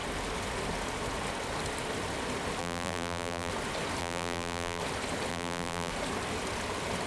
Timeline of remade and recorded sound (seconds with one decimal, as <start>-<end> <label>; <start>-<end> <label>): 0.0-2.6 recorded; 2.6-3.5 remade; 3.5-4.0 recorded; 4.0-4.8 remade; 4.8-5.3 recorded; 5.3-5.9 remade; 5.9-7.1 recorded